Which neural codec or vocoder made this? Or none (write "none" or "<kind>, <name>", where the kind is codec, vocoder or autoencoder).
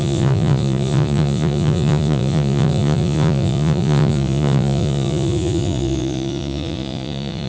vocoder, Vocos